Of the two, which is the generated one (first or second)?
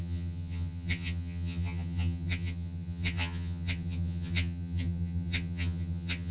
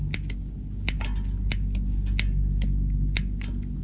first